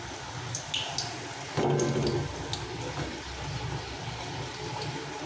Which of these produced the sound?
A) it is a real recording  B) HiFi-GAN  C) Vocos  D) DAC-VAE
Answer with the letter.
A